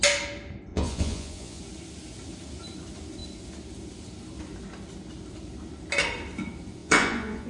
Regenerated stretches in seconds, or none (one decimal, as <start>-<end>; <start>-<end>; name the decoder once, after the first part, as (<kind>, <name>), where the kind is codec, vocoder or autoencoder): 0.7-1.6 (vocoder, Vocos); 6.8-7.5